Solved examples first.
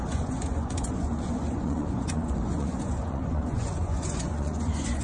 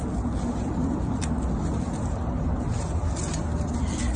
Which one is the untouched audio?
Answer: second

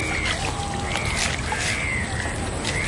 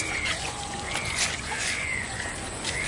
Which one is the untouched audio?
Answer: first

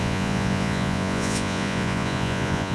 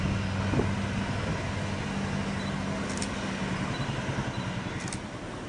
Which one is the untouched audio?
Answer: second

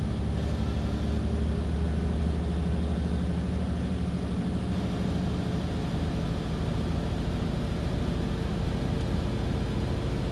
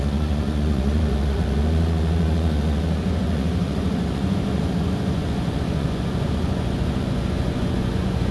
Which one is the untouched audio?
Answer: first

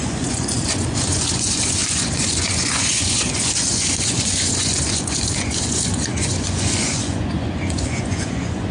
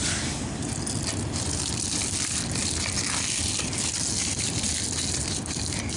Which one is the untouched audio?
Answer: second